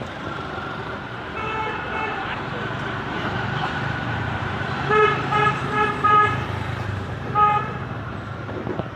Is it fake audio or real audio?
fake